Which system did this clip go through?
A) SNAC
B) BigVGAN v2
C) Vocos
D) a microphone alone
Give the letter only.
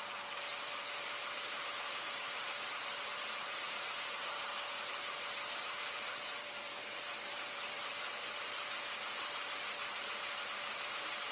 B